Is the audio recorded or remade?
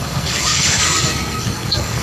remade